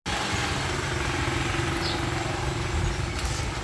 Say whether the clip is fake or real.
real